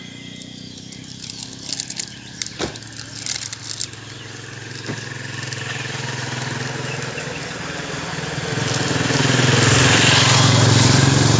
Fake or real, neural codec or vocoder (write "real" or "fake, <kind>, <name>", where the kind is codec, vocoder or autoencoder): real